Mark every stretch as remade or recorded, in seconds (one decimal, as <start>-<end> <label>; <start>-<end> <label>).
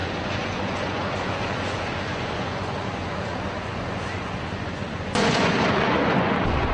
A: 0.0-6.7 remade